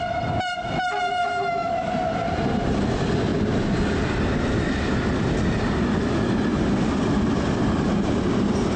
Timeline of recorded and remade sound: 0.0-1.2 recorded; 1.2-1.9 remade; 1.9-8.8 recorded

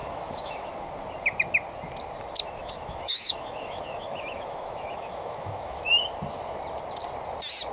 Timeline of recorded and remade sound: 0.0-0.7 remade; 0.7-2.6 recorded; 2.6-5.9 remade; 5.9-7.7 recorded

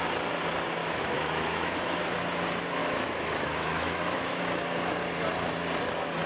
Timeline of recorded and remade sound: 0.0-0.8 recorded; 0.8-2.0 remade; 2.0-2.8 recorded; 2.8-4.4 remade; 4.4-6.3 recorded

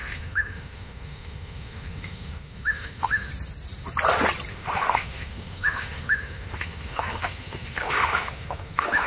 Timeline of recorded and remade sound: 0.0-3.3 remade; 3.3-4.5 recorded; 4.5-9.1 remade